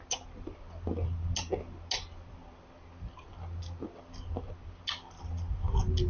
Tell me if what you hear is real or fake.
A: real